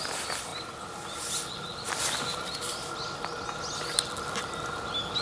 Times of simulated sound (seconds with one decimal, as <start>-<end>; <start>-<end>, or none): none